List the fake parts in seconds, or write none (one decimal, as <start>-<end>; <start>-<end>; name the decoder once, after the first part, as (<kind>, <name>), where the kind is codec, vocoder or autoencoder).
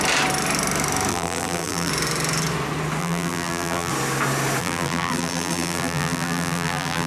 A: 1.1-1.9 (vocoder, BigVGAN v2); 3.0-3.9; 4.6-7.1